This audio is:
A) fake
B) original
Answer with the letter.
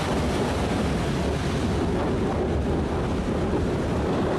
B